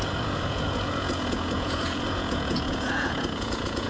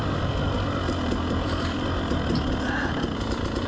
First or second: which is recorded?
second